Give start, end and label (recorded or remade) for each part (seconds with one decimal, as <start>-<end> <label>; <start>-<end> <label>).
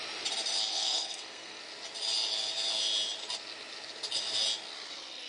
0.0-0.7 recorded; 0.7-1.6 remade; 1.6-5.3 recorded